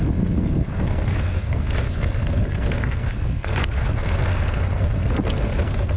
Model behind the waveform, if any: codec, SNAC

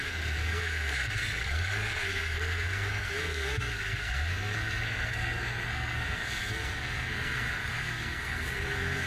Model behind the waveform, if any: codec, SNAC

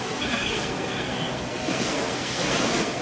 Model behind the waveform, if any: codec, SNAC